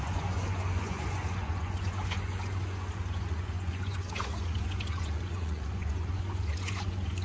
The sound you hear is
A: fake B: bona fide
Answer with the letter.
A